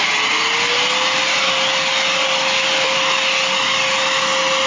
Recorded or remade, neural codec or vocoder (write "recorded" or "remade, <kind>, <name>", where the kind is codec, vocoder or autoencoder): recorded